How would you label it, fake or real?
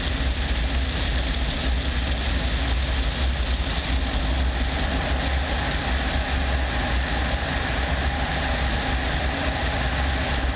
real